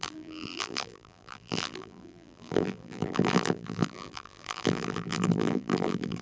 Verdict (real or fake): fake